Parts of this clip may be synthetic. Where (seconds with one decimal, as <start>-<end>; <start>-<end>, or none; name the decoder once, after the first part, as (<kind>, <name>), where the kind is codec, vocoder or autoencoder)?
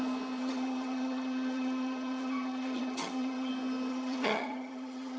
0.4-3.5 (vocoder, HiFi-GAN); 3.9-5.2